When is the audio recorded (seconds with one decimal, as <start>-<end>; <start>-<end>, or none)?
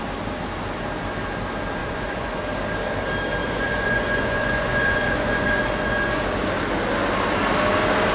0.0-1.8; 2.4-3.4; 6.2-8.1